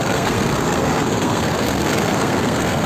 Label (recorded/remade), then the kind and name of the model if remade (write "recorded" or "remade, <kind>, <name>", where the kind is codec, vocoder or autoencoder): remade, codec, SNAC